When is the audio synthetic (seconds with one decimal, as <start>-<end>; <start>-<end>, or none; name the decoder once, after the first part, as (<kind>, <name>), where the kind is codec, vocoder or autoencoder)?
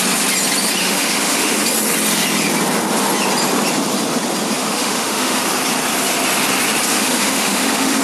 0.8-1.6 (autoencoder, DAC-VAE); 4.6-5.4; 6.9-8.0